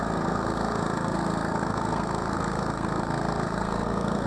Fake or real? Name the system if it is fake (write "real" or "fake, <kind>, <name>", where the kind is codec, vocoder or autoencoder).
fake, codec, SNAC